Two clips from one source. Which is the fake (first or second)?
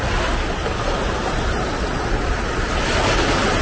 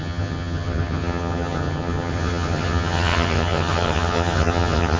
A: second